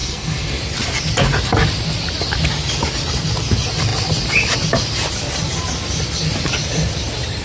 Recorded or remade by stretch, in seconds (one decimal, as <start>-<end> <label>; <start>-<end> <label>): 0.0-0.6 remade; 0.6-7.4 recorded